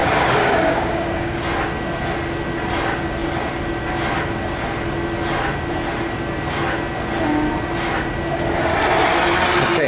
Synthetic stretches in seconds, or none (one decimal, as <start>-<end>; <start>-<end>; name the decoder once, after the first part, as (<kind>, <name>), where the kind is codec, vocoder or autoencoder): 0.0-1.4 (codec, DAC)